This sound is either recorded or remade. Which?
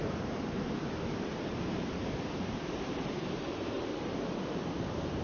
remade